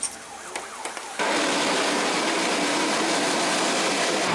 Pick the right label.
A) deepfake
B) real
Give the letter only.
B